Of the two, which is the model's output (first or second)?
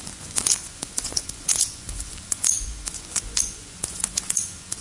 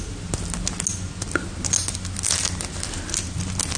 first